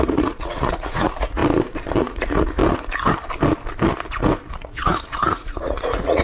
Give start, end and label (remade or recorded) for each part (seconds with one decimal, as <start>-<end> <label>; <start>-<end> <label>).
0.0-1.4 remade; 1.4-2.0 recorded; 2.0-2.6 remade; 2.6-4.5 recorded; 4.5-6.2 remade